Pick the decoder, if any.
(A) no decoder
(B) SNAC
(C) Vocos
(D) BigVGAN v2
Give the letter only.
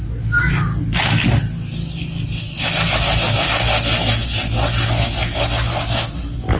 A